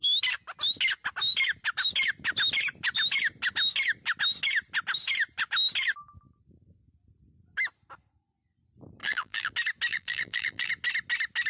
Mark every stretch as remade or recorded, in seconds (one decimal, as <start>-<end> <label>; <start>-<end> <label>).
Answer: 0.0-9.0 recorded; 9.0-9.5 remade; 9.5-9.9 recorded; 9.9-10.7 remade; 10.7-11.5 recorded